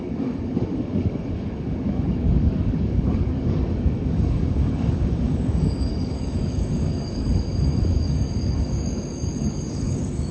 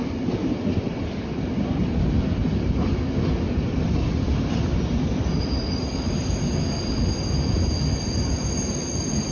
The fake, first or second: first